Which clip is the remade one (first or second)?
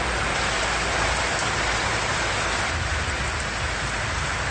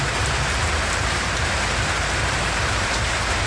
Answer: second